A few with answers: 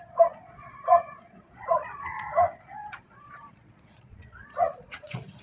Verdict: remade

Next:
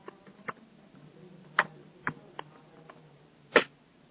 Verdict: recorded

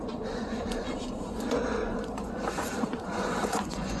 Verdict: remade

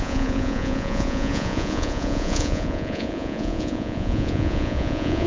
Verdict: remade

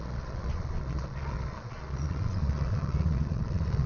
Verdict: remade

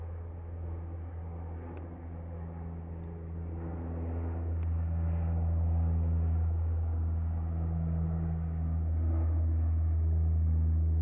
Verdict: recorded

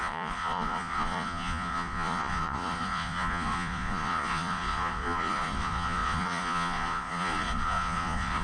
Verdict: remade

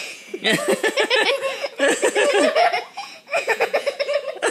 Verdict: remade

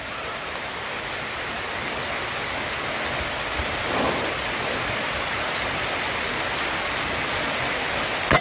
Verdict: recorded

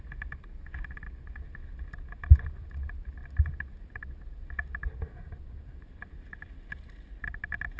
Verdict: recorded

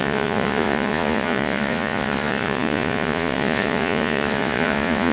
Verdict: remade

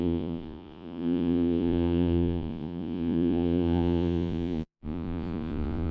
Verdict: remade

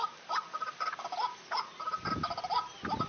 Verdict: recorded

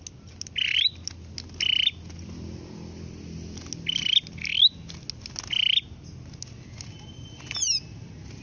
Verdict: recorded